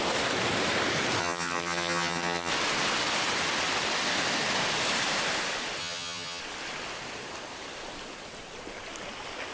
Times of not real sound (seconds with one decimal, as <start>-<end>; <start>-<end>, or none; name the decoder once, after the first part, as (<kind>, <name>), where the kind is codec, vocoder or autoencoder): 1.2-2.5 (vocoder, HiFi-GAN); 5.8-6.4